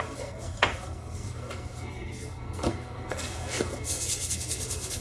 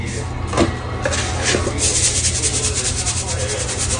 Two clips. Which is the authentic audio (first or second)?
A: second